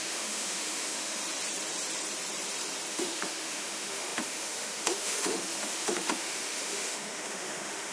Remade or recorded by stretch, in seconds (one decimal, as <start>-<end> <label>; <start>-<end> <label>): 0.0-1.2 remade; 1.2-2.9 recorded; 2.9-7.9 remade